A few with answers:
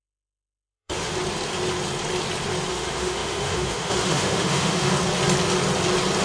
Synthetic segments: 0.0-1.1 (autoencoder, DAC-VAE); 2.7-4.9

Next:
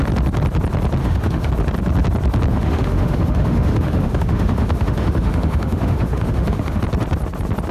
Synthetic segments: 1.0-1.5 (autoencoder, DAC-VAE); 2.5-6.8

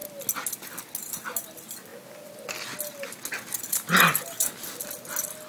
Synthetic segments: none

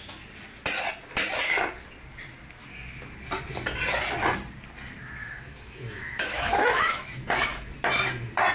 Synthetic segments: 5.2-7.7 (autoencoder, DAC-VAE)

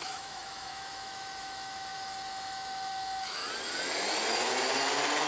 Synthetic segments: 0.0-3.4 (autoencoder, DAC-VAE)

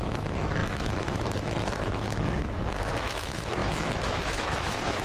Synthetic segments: 0.0-5.0 (autoencoder, DAC-VAE)

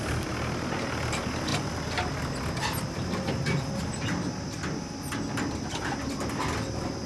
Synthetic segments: none